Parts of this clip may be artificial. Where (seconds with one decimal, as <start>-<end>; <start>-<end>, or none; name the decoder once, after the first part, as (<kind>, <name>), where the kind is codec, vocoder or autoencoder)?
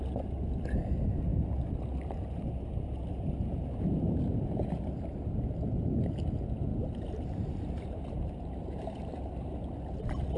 6.7-9.6 (vocoder, BigVGAN v2)